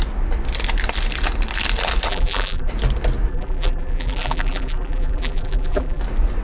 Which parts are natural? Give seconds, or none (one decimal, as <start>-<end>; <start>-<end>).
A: 0.0-2.1; 2.7-3.3; 6.0-6.4